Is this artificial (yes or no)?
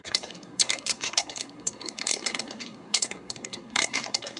yes